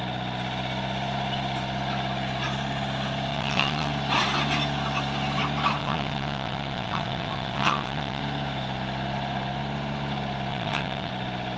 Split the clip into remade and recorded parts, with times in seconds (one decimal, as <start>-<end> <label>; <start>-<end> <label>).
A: 0.0-3.3 recorded; 3.3-3.9 remade; 3.9-5.8 recorded; 5.8-8.2 remade; 8.2-10.5 recorded; 10.5-11.1 remade; 11.1-11.6 recorded